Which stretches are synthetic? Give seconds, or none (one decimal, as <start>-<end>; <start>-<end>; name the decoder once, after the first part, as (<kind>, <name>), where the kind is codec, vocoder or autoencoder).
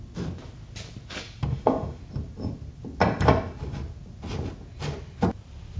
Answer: 1.5-2.0 (autoencoder, DAC-VAE)